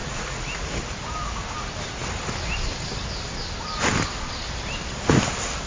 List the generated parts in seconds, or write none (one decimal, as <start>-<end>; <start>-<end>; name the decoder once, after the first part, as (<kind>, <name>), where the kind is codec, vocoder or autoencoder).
0.0-0.6 (vocoder, Vocos)